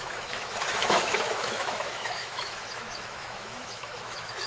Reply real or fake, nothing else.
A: fake